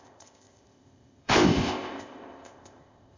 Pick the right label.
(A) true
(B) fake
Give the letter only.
B